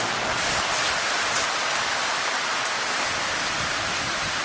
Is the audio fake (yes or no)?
no